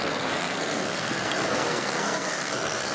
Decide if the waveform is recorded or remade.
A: remade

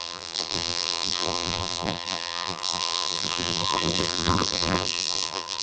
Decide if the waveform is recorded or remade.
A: remade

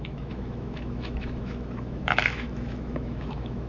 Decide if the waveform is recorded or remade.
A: remade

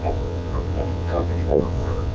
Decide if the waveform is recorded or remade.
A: remade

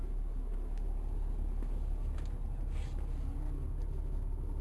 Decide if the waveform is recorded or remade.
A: recorded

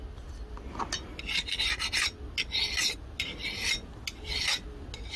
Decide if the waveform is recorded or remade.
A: recorded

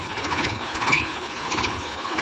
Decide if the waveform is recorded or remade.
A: remade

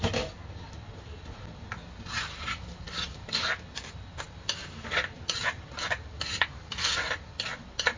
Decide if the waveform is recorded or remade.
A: recorded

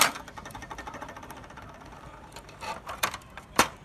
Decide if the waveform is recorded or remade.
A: remade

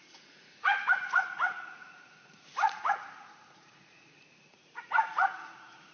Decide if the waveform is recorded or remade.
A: remade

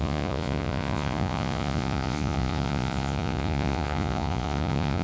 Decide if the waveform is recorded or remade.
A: remade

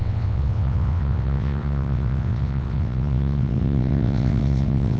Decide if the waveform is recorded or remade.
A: remade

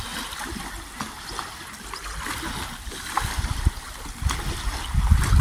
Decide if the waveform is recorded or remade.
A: recorded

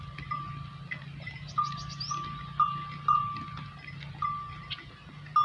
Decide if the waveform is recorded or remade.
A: recorded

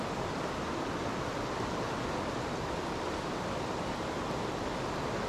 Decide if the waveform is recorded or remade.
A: recorded